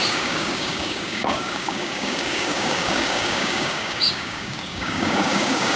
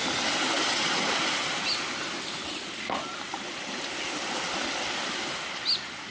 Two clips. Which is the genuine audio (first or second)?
second